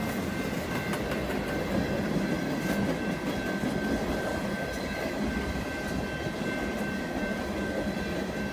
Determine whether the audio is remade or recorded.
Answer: recorded